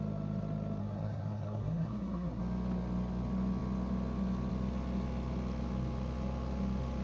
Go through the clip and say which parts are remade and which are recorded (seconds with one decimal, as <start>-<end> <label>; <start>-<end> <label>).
0.0-0.8 recorded; 0.8-2.4 remade; 2.4-7.0 recorded